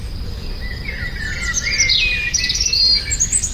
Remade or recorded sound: recorded